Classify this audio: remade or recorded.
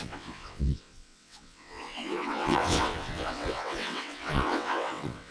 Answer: remade